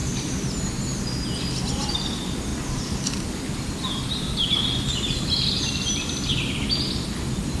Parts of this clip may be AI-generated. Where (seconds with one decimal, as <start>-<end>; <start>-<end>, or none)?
1.9-2.5; 7.0-7.6